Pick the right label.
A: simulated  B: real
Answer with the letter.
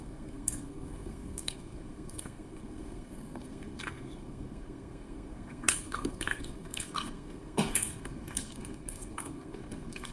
A